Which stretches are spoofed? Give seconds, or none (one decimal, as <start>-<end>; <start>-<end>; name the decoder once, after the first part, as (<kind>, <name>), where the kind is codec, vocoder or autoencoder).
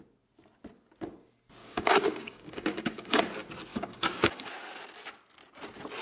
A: 1.6-3.2 (codec, DAC); 3.7-4.5